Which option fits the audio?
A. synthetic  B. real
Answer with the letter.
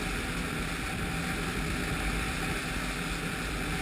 B